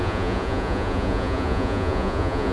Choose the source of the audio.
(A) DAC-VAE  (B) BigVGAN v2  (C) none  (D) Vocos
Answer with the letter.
D